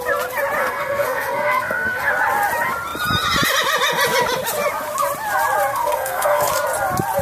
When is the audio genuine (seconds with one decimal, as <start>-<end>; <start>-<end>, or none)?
0.0-0.6; 2.1-5.7; 6.5-7.2